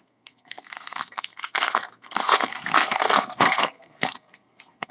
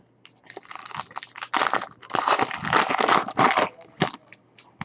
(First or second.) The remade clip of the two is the first